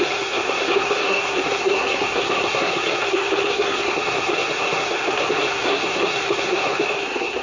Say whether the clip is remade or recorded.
remade